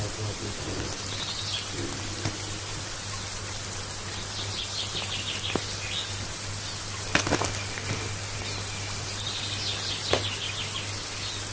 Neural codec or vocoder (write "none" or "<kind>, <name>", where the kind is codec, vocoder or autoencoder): none